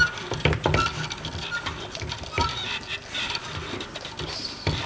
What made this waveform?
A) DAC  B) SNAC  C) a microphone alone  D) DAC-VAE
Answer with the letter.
C